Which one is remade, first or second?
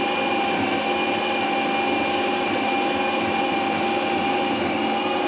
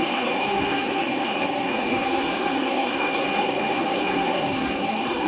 second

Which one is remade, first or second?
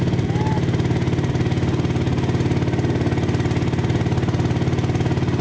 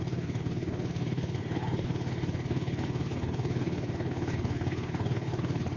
second